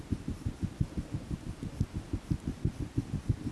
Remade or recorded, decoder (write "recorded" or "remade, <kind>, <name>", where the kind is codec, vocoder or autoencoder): recorded